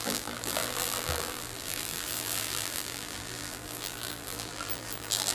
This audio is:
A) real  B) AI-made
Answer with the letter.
B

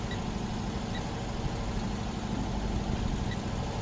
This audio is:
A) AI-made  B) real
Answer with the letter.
B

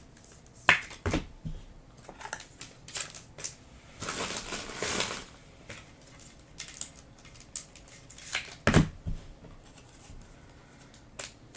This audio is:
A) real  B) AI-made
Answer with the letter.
A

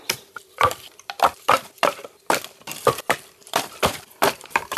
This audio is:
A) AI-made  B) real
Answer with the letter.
A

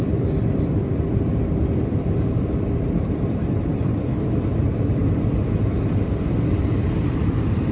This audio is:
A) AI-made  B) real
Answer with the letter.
A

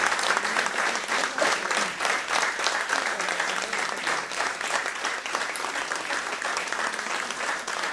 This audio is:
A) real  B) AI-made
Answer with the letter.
B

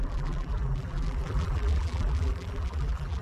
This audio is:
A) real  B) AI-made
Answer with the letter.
B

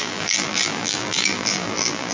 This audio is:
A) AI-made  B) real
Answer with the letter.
A